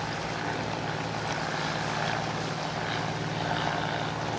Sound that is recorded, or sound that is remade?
recorded